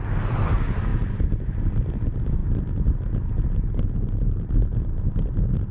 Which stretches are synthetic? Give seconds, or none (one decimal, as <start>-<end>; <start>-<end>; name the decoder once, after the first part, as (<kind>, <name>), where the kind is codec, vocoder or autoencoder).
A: 0.9-1.6 (vocoder, BigVGAN v2)